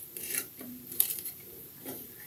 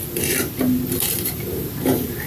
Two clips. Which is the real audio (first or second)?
second